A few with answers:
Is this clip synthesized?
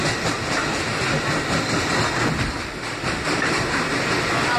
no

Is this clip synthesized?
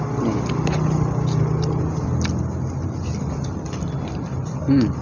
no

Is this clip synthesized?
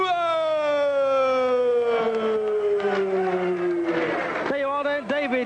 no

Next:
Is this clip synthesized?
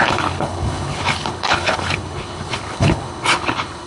yes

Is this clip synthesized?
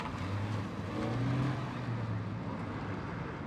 no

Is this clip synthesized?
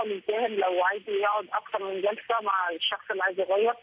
no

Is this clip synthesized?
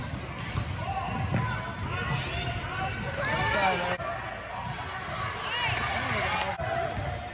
no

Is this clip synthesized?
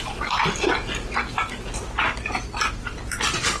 no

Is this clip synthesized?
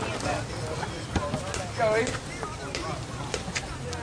no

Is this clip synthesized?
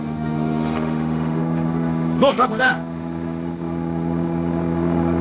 yes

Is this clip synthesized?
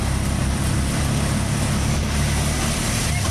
no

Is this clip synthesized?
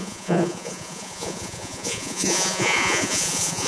yes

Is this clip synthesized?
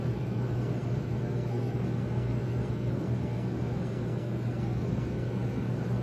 yes